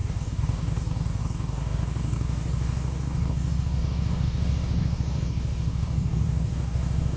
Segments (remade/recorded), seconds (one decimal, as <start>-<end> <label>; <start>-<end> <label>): 0.0-7.2 remade